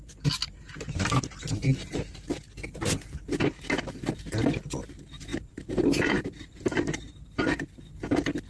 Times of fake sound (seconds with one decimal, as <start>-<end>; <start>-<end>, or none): 5.3-7.6